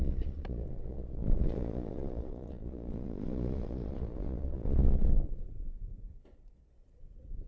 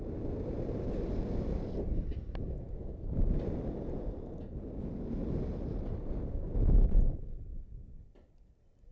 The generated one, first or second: first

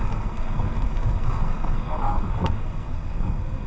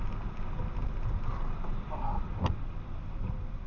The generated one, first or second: first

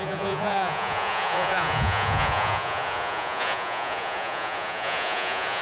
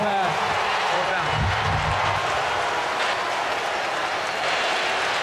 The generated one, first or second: first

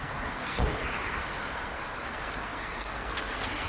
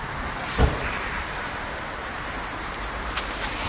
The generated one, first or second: first